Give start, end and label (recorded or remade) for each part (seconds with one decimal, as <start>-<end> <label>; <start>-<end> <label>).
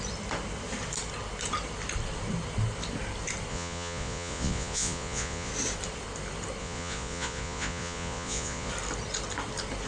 0.0-3.5 recorded; 3.5-5.5 remade; 5.5-6.6 recorded; 6.6-8.7 remade; 8.7-9.9 recorded